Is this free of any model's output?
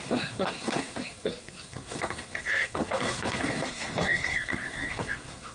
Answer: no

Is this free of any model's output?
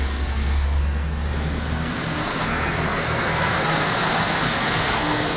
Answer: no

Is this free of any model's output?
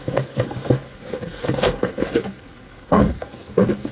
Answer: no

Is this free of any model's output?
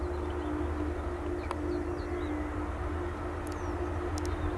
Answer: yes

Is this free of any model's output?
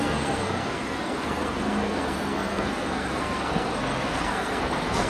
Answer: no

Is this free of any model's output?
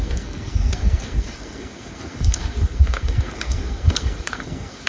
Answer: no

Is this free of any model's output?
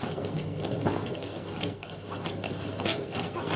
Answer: no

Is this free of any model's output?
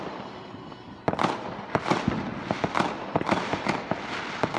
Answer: yes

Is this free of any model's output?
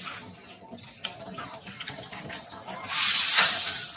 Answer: yes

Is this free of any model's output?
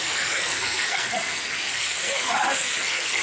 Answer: no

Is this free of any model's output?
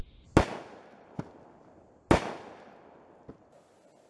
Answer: yes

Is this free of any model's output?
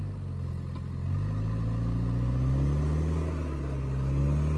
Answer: yes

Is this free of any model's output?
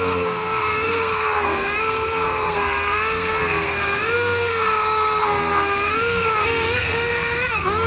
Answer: no